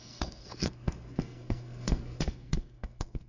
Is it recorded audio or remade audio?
remade